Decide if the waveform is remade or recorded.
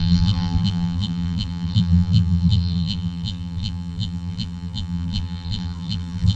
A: remade